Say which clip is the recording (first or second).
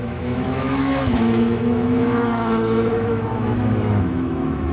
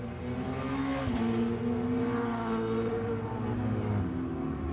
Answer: second